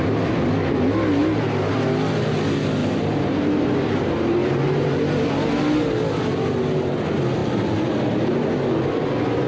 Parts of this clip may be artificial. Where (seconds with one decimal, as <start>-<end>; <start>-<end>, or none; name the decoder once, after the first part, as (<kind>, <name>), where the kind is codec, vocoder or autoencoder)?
2.8-5.3 (vocoder, BigVGAN v2)